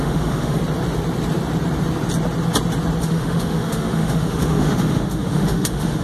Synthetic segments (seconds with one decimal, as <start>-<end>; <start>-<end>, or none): 0.0-0.6; 3.0-6.0